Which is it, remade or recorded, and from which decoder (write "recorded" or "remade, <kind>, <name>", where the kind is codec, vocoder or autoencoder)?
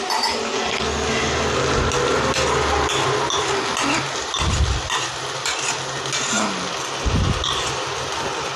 recorded